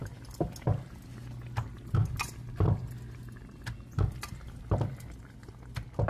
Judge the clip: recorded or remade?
recorded